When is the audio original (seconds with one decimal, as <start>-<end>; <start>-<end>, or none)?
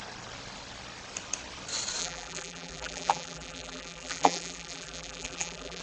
0.0-2.0